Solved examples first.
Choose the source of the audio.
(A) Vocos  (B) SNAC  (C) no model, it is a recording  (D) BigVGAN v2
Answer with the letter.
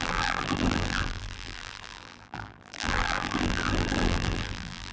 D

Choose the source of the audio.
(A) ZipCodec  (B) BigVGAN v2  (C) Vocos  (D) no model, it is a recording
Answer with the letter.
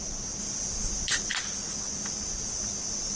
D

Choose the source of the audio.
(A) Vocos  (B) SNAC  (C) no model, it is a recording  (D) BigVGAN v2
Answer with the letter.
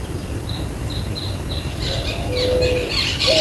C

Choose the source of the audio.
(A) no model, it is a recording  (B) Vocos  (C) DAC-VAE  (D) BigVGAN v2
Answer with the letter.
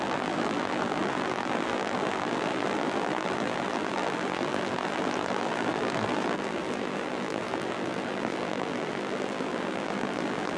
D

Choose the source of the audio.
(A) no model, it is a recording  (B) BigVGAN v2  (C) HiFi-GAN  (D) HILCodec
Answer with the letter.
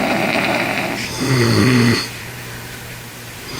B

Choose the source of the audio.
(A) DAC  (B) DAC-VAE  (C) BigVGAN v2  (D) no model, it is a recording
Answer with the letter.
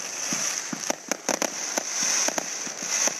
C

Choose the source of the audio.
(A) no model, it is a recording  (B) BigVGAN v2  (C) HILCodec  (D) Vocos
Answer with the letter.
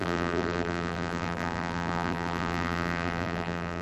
B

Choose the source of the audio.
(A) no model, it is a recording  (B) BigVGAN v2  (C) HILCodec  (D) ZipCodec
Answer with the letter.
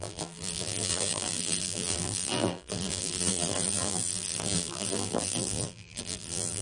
B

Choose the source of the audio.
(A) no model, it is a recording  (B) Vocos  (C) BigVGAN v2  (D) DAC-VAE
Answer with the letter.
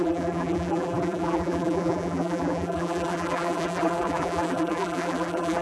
C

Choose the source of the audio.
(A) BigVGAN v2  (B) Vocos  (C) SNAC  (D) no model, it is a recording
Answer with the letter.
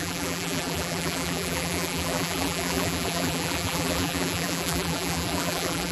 A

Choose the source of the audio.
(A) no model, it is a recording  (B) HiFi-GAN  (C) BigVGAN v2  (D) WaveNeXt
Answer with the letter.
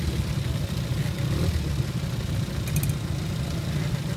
A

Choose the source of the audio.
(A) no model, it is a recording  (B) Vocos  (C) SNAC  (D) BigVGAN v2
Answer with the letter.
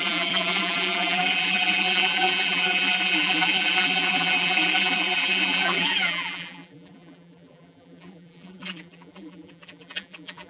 D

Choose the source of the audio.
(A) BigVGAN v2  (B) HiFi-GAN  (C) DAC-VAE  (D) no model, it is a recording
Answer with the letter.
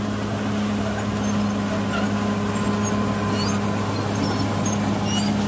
D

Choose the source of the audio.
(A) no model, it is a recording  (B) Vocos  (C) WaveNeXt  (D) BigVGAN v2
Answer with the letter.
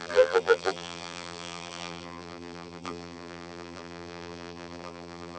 D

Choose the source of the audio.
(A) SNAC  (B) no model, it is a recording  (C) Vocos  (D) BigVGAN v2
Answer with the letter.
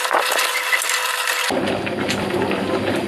D